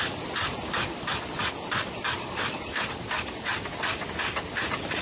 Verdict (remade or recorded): recorded